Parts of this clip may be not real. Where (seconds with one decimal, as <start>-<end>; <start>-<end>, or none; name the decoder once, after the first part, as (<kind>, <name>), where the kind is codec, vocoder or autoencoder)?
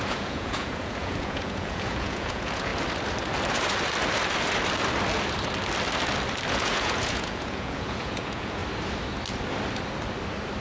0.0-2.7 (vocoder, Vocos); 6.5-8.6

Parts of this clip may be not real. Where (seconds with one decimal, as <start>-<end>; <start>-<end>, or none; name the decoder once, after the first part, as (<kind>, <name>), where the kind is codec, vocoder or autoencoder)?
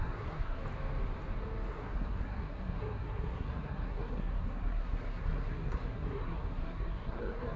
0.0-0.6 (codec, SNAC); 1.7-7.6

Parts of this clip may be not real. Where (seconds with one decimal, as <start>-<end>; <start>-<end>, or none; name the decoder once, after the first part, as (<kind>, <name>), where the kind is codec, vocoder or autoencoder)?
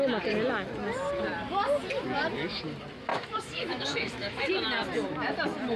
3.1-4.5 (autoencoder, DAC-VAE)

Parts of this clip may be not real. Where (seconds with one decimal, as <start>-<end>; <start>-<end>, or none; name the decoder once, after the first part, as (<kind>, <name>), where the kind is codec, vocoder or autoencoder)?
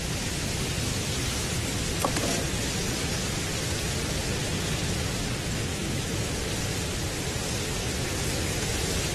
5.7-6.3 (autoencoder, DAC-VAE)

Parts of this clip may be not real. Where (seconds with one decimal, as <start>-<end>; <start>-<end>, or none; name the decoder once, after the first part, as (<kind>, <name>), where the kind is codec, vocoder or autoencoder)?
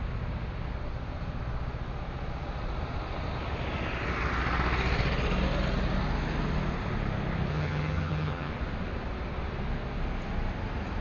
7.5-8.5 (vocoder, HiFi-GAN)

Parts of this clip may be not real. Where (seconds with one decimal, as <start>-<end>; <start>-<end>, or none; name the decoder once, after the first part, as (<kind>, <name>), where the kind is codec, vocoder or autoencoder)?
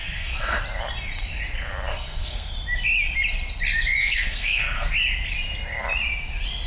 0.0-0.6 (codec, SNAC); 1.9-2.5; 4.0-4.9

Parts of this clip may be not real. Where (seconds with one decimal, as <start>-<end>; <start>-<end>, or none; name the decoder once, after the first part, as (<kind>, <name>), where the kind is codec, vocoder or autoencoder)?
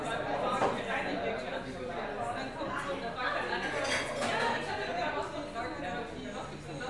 none